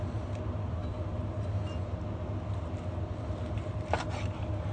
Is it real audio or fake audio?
real